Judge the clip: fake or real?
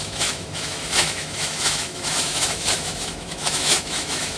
fake